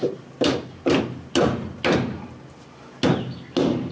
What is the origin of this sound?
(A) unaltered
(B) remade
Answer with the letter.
A